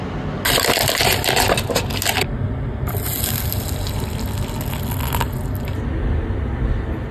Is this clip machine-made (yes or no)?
no